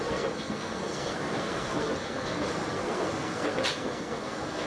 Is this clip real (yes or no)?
no